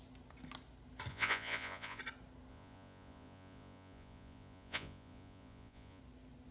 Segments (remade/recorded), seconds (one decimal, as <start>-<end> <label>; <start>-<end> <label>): 0.0-1.1 recorded; 1.1-2.0 remade; 2.0-2.5 recorded; 2.5-6.0 remade; 6.0-6.5 recorded